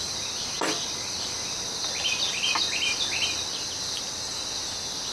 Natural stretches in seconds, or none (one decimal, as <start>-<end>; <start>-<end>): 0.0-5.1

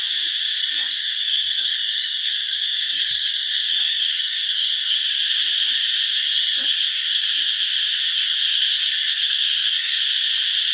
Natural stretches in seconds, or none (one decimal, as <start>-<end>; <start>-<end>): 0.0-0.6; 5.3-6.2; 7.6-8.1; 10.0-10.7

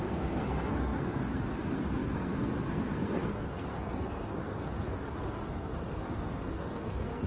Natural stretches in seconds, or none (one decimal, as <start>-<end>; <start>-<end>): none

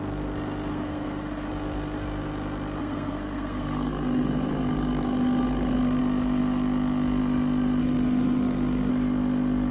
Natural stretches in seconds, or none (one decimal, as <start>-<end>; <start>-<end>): 0.0-0.7; 1.5-2.8; 6.0-7.8; 8.9-9.7

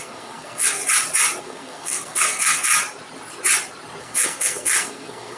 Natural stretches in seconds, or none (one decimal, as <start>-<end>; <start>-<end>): 0.8-1.4; 2.7-4.0